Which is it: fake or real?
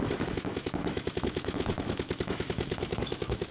fake